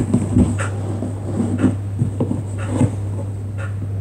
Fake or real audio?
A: real